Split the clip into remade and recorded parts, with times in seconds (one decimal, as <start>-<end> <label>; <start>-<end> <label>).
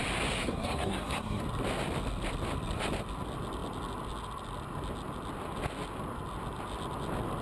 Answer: 0.0-0.4 recorded; 0.4-1.4 remade; 1.4-7.4 recorded